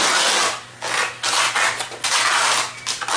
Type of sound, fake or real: real